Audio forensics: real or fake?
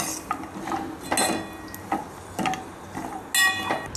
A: real